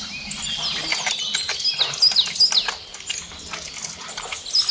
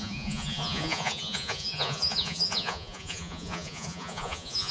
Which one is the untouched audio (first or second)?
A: first